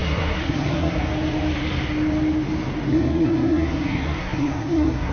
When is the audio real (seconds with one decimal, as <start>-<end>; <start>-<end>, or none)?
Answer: 1.1-2.9